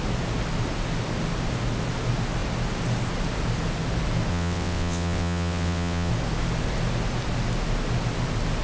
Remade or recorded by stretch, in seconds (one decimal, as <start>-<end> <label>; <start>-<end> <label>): 0.0-4.3 recorded; 4.3-6.1 remade; 6.1-8.6 recorded